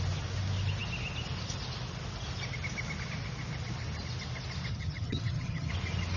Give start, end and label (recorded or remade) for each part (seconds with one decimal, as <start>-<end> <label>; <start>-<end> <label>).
0.0-4.7 recorded; 4.7-5.7 remade; 5.7-6.2 recorded